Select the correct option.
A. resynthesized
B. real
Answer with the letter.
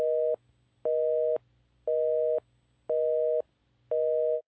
B